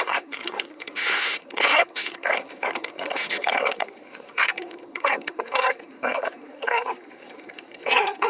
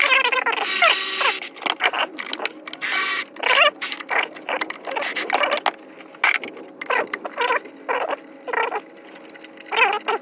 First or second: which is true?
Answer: second